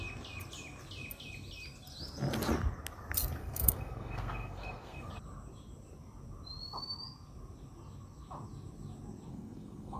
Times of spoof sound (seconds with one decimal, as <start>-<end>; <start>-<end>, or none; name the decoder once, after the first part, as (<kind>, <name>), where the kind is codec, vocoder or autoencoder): 3.4-5.1 (codec, SNAC); 9.3-10.0